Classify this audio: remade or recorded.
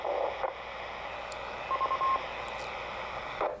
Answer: recorded